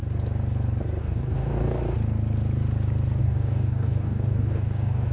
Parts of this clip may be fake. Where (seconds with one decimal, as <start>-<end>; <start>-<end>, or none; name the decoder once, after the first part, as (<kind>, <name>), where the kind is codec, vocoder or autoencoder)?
1.0-1.8 (codec, DAC); 3.2-5.1